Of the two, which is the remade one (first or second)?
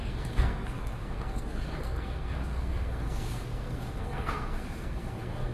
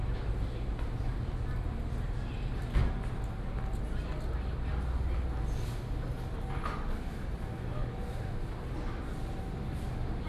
first